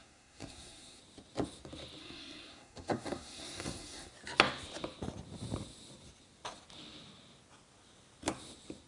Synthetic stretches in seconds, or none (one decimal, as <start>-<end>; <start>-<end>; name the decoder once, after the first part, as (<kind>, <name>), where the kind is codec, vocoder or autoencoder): 0.0-1.0 (codec, SNAC); 2.0-4.1